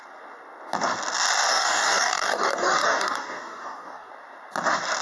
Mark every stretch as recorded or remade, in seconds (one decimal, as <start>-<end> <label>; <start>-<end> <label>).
0.0-1.5 recorded; 1.5-4.1 remade; 4.1-5.0 recorded